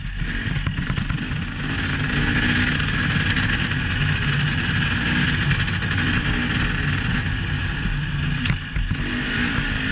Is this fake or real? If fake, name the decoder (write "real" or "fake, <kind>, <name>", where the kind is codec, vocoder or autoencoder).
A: real